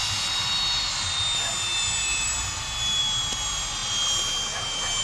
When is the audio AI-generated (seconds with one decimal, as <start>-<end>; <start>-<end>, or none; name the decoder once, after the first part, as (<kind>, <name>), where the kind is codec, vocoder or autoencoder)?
none